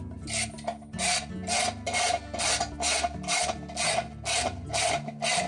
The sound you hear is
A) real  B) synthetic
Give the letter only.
A